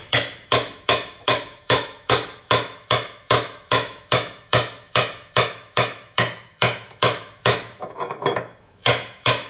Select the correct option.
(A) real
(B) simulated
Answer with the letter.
B